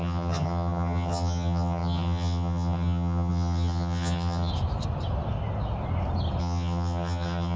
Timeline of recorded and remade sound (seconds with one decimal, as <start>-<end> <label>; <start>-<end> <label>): 0.0-4.5 remade; 4.5-6.4 recorded; 6.4-7.6 remade